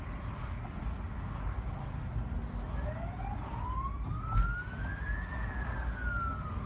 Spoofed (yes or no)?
no